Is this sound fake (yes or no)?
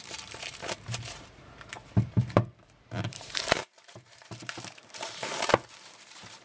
yes